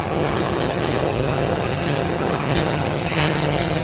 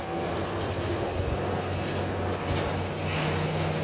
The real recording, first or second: second